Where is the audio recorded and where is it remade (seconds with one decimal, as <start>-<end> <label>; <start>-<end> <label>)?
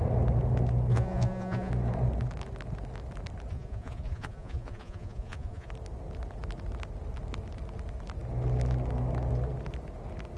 0.0-0.9 recorded; 0.9-1.7 remade; 1.7-3.5 recorded; 3.5-5.7 remade; 5.7-10.4 recorded